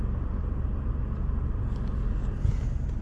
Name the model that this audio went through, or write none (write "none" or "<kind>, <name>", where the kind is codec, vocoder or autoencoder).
vocoder, BigVGAN v2